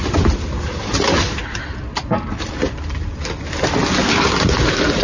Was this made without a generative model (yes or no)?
yes